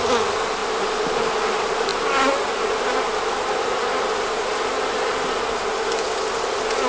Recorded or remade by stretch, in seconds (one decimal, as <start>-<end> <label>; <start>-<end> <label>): 0.0-6.9 recorded